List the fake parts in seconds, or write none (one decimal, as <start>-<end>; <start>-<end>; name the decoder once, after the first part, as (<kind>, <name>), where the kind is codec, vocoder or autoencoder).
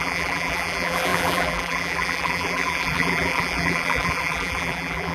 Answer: 0.0-5.1 (vocoder, BigVGAN v2)